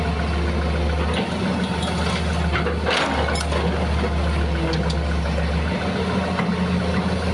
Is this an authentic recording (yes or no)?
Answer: yes